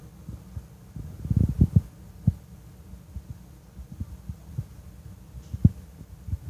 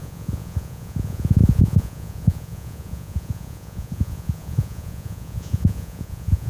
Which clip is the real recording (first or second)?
first